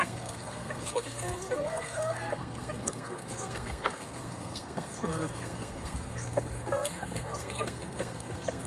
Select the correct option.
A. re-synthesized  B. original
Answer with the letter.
A